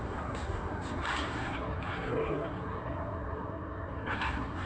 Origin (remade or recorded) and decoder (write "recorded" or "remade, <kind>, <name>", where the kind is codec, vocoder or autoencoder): remade, codec, SNAC